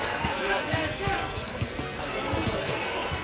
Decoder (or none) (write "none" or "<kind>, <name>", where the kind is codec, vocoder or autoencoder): codec, SNAC